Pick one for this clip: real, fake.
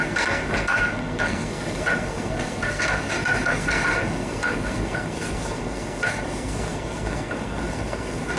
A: fake